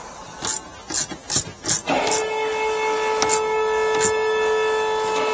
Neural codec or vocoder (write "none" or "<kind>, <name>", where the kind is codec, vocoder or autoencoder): none